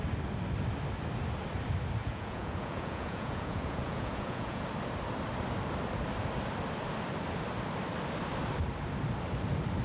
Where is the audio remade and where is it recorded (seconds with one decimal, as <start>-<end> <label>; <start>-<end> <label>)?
0.0-2.0 recorded; 2.0-4.6 remade; 4.6-9.8 recorded